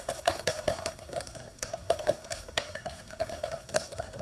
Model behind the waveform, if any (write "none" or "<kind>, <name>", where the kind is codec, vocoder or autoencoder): codec, SNAC